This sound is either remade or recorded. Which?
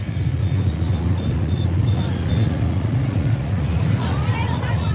remade